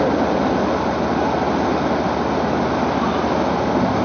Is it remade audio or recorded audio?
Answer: recorded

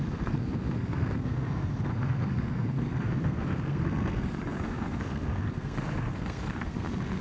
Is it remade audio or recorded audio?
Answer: remade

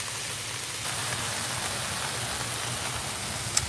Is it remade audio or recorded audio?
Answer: recorded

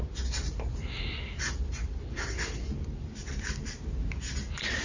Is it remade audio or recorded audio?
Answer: recorded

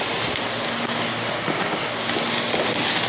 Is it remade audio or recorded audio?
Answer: recorded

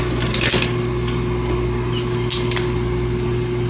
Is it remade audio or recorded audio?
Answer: recorded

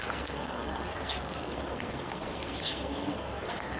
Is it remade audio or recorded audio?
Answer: remade